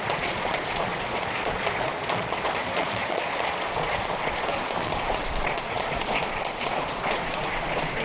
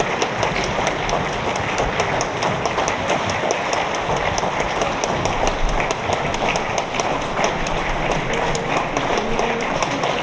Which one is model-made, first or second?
first